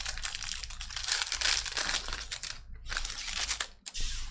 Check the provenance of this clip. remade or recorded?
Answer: recorded